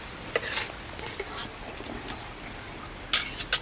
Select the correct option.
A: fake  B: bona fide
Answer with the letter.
B